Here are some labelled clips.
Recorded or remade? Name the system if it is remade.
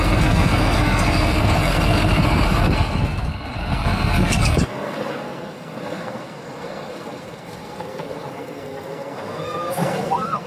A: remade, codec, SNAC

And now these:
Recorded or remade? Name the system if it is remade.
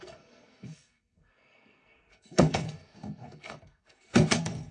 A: remade, codec, SNAC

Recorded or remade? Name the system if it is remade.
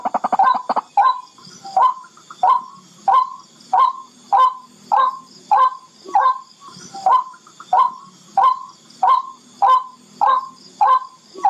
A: recorded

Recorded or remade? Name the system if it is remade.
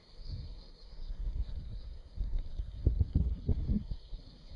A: remade, codec, SNAC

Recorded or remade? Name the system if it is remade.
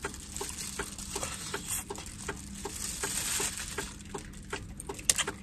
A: recorded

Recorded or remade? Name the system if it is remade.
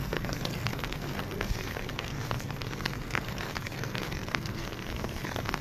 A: remade, codec, SNAC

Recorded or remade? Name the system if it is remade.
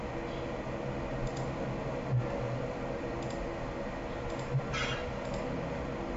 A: recorded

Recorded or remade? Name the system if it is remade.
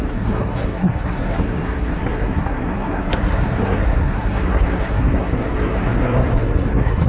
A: remade, codec, SNAC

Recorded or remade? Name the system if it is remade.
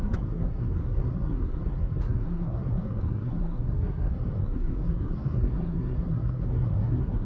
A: remade, codec, SNAC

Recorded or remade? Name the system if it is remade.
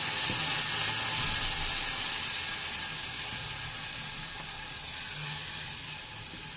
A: recorded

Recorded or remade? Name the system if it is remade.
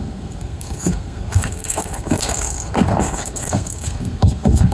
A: remade, codec, SNAC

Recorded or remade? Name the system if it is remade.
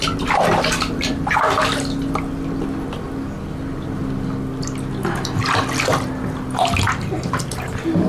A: recorded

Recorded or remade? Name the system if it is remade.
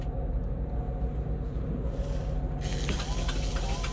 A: recorded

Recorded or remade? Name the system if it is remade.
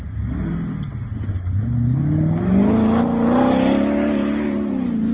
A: recorded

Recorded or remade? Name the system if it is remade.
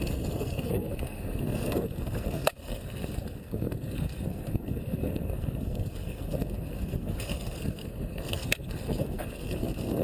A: remade, codec, SNAC